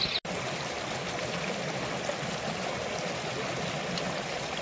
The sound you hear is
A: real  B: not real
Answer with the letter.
A